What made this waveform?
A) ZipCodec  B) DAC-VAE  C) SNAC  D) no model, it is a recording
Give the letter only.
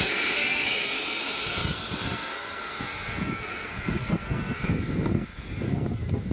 C